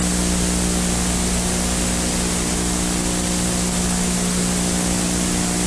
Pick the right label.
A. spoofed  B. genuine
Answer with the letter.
B